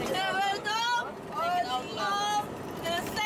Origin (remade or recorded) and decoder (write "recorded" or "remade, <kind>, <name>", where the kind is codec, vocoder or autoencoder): recorded